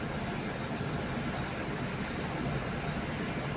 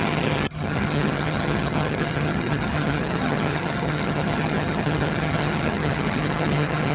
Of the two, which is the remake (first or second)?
second